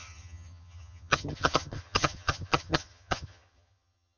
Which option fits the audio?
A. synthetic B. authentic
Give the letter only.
A